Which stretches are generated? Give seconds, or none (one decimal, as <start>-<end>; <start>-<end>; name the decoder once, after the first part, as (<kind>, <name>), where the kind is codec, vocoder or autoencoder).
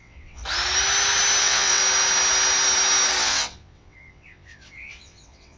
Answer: 0.0-0.4 (vocoder, WaveNeXt); 1.4-1.8; 3.2-5.6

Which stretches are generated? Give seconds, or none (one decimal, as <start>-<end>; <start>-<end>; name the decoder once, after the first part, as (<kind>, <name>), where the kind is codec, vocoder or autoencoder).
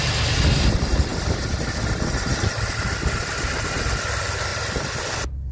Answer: none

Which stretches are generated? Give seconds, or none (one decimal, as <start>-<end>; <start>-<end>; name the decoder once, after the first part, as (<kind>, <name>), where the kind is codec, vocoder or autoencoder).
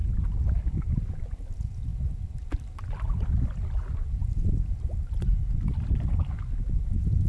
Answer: none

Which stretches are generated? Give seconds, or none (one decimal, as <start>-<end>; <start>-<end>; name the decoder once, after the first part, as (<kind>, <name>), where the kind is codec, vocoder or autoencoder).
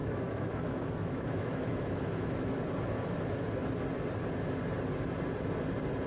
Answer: 0.0-2.6 (autoencoder, DAC-VAE)